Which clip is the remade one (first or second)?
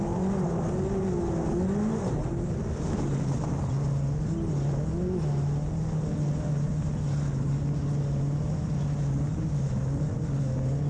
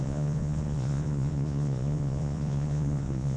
second